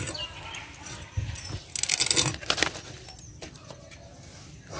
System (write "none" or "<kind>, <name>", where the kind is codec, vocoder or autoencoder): none